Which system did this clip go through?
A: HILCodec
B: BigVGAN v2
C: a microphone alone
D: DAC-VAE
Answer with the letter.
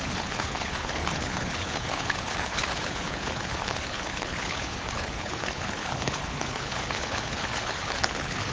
A